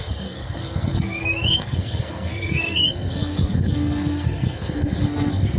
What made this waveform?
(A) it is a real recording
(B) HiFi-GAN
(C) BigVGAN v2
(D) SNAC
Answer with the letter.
D